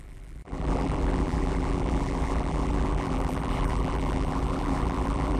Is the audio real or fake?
fake